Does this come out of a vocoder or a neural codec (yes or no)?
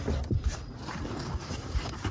no